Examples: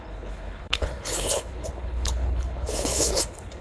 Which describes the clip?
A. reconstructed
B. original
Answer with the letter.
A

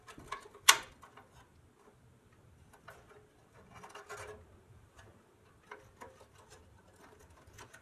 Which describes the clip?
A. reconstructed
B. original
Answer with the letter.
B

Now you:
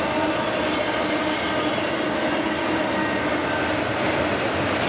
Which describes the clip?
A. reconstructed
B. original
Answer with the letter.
B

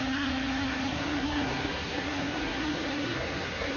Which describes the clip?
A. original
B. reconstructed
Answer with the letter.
B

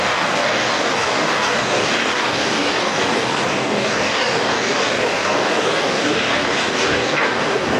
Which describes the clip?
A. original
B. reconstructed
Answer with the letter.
B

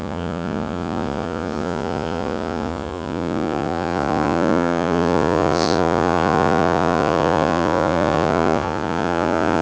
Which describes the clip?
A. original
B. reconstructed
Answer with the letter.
B